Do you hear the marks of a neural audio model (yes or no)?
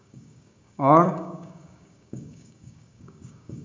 yes